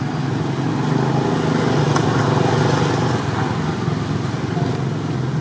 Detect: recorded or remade recorded